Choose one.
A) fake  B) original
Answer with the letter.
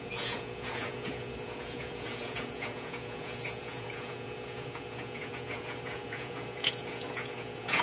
A